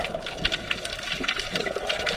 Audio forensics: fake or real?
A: real